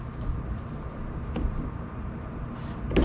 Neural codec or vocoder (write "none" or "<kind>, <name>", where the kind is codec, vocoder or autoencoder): none